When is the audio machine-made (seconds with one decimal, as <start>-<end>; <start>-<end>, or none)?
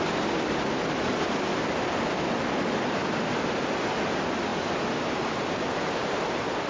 none